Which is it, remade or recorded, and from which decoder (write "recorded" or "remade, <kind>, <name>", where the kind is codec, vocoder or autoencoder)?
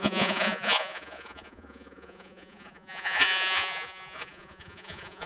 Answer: remade, vocoder, Vocos